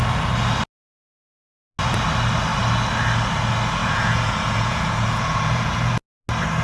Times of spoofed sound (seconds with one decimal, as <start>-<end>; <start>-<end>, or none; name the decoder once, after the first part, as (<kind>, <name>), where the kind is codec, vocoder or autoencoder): 3.8-5.9 (vocoder, Vocos)